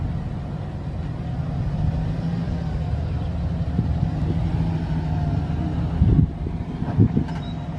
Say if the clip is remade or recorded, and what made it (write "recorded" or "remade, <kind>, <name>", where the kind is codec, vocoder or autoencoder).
recorded